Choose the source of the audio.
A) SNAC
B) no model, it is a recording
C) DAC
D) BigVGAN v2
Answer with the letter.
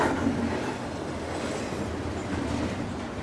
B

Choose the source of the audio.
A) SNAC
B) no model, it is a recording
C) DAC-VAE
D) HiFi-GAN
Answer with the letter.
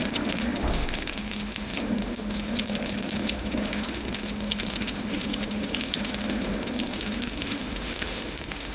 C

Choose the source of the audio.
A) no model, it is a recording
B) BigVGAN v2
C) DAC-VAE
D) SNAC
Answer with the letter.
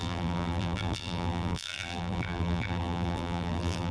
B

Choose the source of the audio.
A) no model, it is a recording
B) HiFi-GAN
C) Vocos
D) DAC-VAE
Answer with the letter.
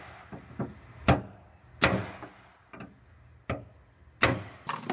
A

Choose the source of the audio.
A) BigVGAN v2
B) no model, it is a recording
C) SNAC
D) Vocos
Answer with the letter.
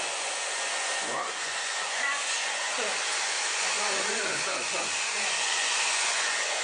D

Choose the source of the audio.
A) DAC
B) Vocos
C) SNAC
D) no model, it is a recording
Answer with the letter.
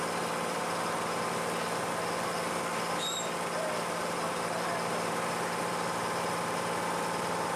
D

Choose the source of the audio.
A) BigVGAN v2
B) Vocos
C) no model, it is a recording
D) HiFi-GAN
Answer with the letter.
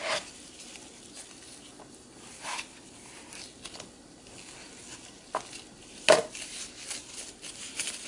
C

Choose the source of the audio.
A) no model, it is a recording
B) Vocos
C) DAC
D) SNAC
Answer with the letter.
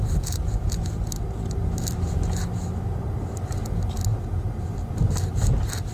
A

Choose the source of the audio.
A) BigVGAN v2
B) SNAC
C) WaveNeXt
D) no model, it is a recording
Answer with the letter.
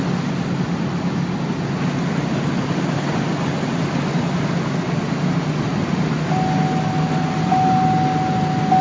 D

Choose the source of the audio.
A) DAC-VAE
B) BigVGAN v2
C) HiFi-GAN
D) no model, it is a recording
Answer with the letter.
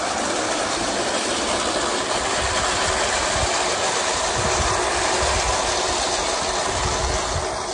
D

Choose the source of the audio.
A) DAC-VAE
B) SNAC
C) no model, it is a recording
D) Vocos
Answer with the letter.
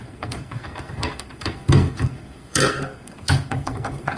B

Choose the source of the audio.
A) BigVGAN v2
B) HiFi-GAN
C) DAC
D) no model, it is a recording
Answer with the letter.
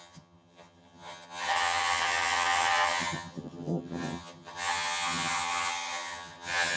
B